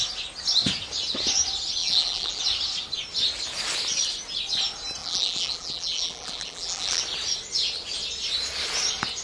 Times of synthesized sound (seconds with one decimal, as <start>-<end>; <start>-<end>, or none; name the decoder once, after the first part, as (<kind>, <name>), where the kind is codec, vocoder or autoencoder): 1.8-2.4 (vocoder, BigVGAN v2); 5.0-7.0